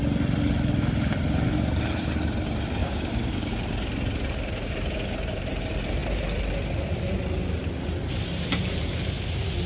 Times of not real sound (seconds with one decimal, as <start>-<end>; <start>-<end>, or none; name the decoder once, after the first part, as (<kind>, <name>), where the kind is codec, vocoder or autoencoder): 2.8-3.6 (codec, DAC)